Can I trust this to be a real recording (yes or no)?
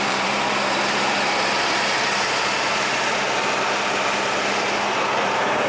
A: no